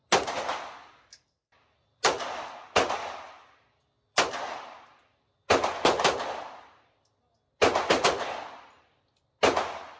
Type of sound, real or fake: real